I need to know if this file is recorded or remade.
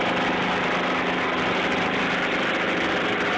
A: recorded